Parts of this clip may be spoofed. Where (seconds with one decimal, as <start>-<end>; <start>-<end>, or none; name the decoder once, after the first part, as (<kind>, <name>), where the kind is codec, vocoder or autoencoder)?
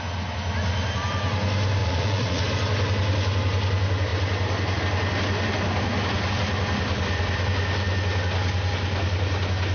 1.8-2.5 (vocoder, Vocos)